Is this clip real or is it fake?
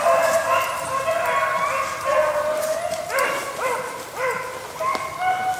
real